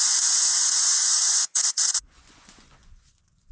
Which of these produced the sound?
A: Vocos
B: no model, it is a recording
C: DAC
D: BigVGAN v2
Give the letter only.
A